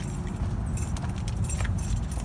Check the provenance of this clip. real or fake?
real